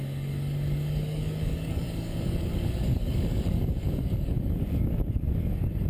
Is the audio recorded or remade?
remade